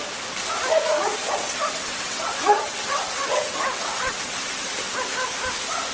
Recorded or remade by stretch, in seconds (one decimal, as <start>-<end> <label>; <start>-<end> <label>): 0.0-1.2 recorded; 1.2-4.7 remade; 4.7-5.9 recorded